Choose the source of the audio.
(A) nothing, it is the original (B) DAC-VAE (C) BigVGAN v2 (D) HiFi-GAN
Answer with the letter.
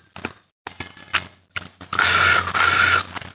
A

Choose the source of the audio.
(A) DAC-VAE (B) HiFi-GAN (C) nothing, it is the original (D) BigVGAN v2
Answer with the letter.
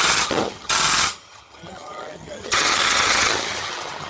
B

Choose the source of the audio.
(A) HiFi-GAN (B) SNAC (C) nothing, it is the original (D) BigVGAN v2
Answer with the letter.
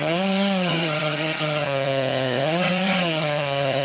A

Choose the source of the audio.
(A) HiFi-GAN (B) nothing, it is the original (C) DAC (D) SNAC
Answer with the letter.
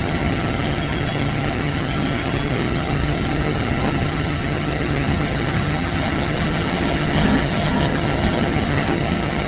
A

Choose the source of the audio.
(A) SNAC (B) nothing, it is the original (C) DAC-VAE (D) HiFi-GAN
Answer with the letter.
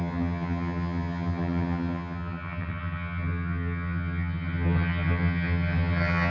D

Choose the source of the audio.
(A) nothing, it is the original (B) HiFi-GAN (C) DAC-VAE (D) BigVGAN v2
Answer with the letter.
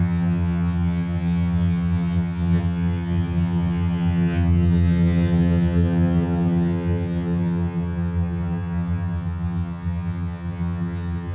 B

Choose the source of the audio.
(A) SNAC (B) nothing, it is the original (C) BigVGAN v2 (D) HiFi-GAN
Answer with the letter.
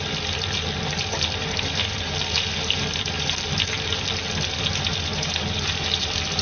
B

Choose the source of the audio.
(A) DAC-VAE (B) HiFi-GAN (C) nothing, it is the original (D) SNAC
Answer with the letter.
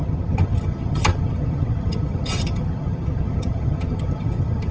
B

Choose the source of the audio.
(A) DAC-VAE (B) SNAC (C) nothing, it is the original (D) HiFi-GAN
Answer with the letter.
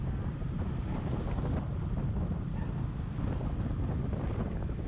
C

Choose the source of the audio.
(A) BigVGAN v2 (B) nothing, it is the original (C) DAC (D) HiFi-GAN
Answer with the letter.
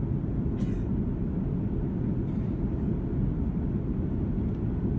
B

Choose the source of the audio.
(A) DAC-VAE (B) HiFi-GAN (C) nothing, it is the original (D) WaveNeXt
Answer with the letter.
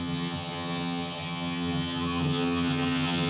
B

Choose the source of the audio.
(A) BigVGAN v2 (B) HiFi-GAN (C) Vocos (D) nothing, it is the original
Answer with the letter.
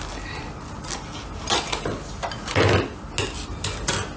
D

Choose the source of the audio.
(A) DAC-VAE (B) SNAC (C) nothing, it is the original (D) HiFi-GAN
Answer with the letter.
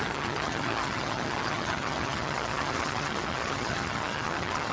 D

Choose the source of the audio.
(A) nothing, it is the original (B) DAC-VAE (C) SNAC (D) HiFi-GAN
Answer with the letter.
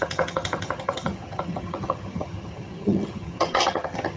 D